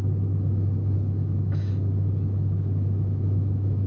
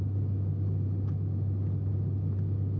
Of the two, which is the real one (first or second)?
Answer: second